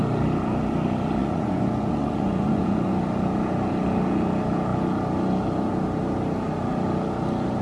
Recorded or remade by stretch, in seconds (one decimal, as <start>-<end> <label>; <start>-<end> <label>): 0.0-1.2 recorded; 1.2-2.9 remade; 2.9-7.6 recorded